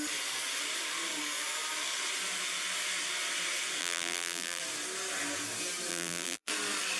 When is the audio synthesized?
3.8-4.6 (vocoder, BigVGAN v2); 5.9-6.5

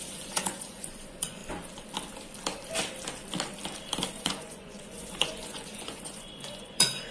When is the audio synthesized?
0.0-1.4 (vocoder, Vocos); 4.1-7.1

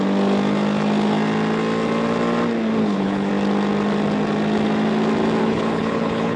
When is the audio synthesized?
2.8-3.3 (codec, HILCodec); 5.4-6.4